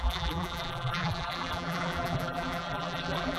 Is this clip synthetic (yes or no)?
yes